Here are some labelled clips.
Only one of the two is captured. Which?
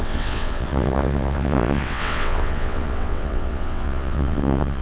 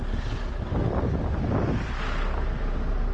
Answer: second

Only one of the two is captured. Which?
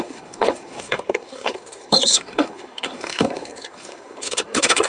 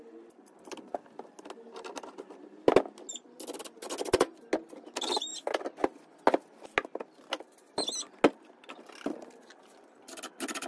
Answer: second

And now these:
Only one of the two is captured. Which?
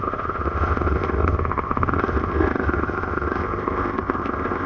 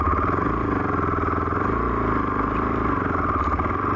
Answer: second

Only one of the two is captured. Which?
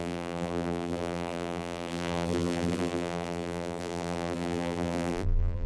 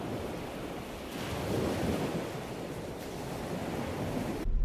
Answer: second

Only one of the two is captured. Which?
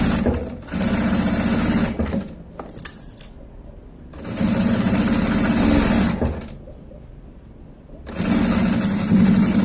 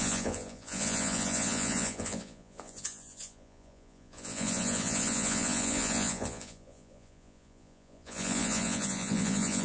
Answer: first